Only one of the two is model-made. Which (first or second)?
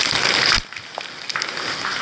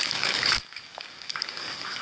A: second